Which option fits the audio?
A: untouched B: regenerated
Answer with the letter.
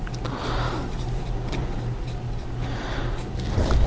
A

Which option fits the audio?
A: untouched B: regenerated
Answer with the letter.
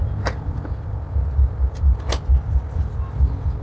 A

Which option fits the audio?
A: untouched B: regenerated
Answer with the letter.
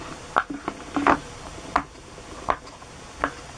A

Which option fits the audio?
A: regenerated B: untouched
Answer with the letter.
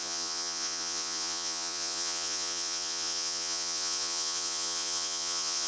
A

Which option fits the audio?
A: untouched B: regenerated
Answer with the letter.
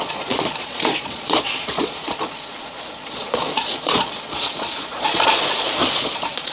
B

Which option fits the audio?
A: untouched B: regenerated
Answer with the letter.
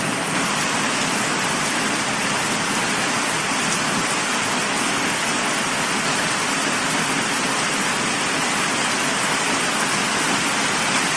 A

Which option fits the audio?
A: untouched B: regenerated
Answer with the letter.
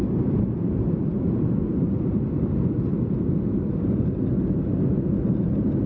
A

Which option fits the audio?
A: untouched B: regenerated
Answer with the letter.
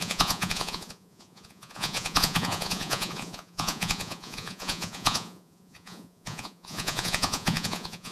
B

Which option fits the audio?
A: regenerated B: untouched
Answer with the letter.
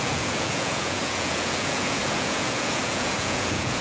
A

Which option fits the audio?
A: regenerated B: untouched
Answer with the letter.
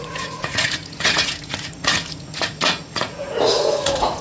A